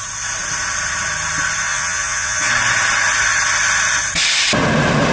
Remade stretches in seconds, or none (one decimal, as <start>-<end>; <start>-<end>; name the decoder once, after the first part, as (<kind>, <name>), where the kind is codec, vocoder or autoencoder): 1.7-2.5 (vocoder, Vocos)